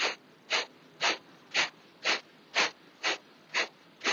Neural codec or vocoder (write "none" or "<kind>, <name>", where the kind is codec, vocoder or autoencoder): none